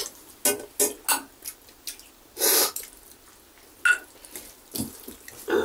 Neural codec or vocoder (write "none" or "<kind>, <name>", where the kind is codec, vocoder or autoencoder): none